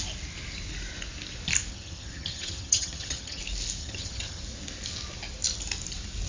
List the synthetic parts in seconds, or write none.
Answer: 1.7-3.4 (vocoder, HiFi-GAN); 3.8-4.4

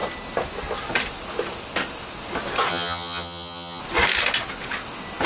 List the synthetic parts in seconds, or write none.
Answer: 2.7-3.8 (vocoder, HiFi-GAN)

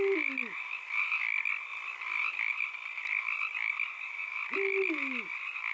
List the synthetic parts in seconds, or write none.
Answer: none

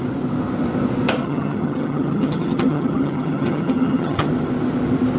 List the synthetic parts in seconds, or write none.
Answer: 1.2-4.3 (vocoder, HiFi-GAN)

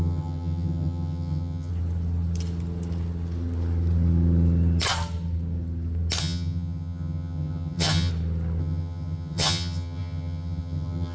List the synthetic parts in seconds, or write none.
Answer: 0.0-1.7 (vocoder, HiFi-GAN); 6.2-8.1; 8.6-11.1